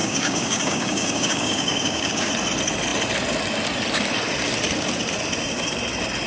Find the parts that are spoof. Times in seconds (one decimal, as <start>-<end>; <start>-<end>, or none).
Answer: 0.0-2.3